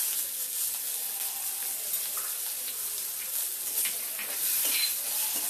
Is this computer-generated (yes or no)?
no